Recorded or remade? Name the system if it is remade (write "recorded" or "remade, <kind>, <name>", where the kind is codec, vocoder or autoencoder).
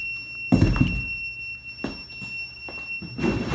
recorded